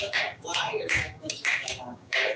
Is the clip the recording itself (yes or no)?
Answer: no